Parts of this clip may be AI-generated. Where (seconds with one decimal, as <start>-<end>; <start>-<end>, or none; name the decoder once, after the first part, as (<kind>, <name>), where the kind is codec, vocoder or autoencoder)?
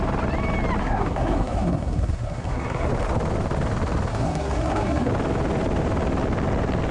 0.8-2.9 (codec, SNAC); 4.1-5.1